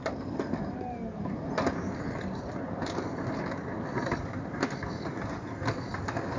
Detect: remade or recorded recorded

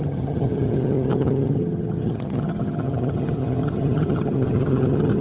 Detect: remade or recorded remade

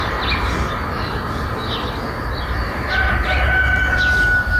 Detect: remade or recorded recorded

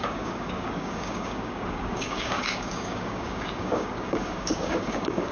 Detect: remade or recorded remade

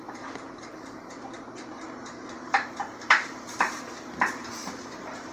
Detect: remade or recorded remade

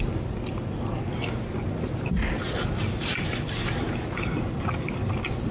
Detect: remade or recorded recorded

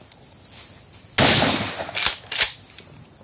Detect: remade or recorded recorded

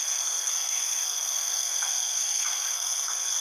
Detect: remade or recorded remade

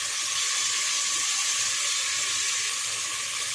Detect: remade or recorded recorded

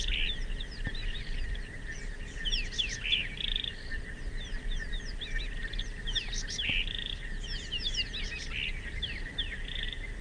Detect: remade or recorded recorded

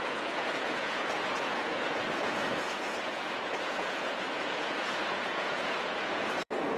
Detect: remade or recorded remade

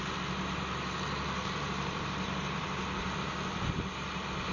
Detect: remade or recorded recorded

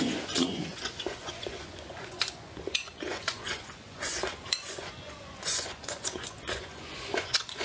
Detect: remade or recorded remade